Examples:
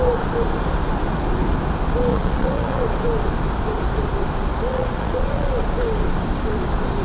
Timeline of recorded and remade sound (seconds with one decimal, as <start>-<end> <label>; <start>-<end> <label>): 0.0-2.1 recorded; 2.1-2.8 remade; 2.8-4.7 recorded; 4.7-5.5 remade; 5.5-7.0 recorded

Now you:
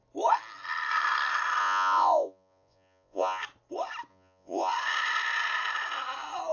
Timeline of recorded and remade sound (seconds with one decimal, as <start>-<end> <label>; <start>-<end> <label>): 0.0-1.6 recorded; 1.6-3.4 remade; 3.4-4.1 recorded; 4.1-4.7 remade; 4.7-6.5 recorded

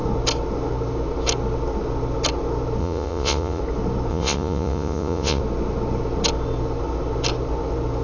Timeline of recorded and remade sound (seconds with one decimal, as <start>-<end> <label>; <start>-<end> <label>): 0.0-2.8 recorded; 2.8-3.6 remade; 3.6-4.1 recorded; 4.1-5.4 remade; 5.4-8.0 recorded

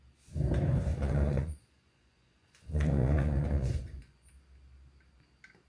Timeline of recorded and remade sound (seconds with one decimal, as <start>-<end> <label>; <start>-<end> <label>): 0.0-0.9 recorded; 0.9-4.3 remade; 4.3-5.7 recorded